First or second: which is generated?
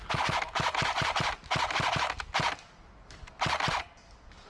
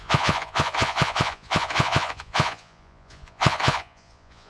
second